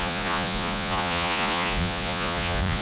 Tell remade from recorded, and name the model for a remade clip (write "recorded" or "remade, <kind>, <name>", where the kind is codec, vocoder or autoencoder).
remade, vocoder, Vocos